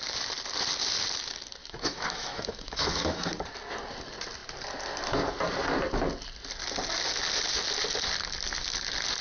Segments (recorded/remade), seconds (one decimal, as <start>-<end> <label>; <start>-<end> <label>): 0.0-1.6 recorded; 1.6-3.3 remade; 3.3-9.2 recorded